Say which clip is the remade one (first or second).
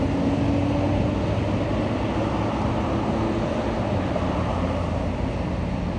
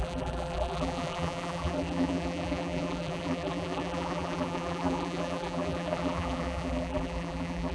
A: second